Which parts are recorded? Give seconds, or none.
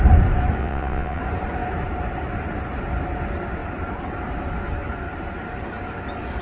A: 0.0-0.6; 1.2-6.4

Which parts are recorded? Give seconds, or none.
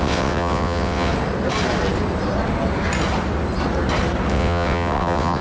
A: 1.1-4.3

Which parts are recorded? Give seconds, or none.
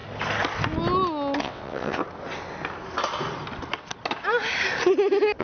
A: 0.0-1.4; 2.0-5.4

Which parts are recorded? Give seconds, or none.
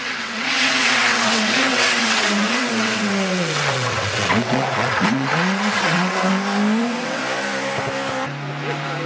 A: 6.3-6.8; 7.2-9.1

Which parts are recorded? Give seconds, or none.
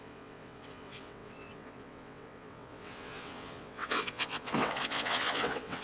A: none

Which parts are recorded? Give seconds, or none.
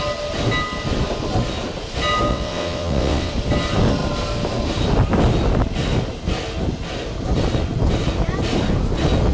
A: 0.0-2.3; 3.3-9.3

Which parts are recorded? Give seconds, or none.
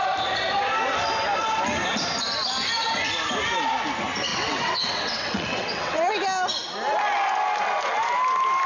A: 0.0-4.3; 6.1-8.7